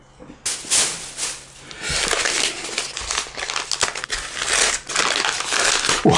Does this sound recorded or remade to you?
recorded